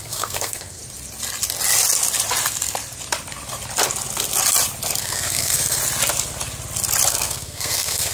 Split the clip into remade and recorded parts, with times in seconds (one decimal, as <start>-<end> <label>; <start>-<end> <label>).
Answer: 0.0-0.8 remade; 0.8-5.0 recorded; 5.0-5.8 remade; 5.8-7.1 recorded; 7.1-8.1 remade